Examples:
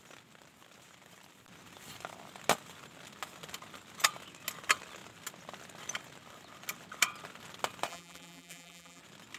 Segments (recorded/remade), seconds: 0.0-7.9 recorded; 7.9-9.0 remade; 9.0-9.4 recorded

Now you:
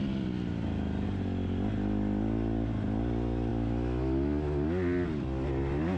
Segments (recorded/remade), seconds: 0.0-6.0 recorded

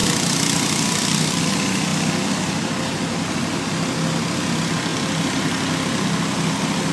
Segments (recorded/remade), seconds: 0.0-1.4 remade; 1.4-6.9 recorded

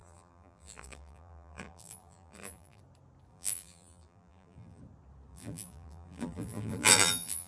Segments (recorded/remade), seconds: 0.0-2.8 remade; 2.8-3.3 recorded; 3.3-4.8 remade; 4.8-5.3 recorded; 5.3-7.5 remade

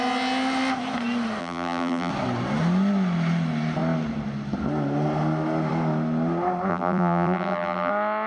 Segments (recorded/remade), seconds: 0.0-1.4 recorded; 1.4-2.1 remade; 2.1-6.7 recorded; 6.7-7.9 remade; 7.9-8.3 recorded